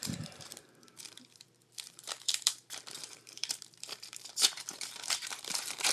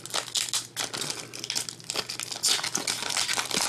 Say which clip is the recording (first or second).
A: second